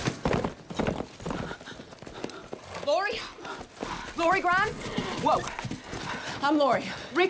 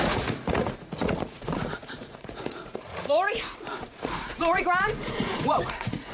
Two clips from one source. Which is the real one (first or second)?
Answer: first